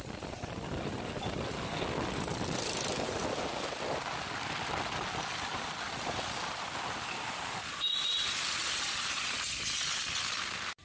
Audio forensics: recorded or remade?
recorded